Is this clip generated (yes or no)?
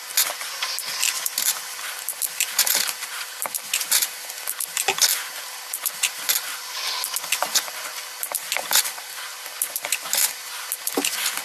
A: no